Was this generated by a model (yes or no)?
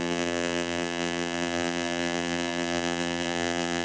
yes